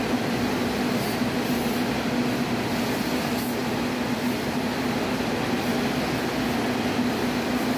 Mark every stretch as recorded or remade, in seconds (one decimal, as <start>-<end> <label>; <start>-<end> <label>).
0.0-7.8 recorded